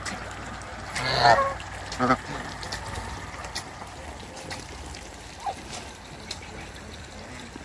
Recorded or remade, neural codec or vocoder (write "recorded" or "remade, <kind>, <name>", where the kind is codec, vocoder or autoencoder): recorded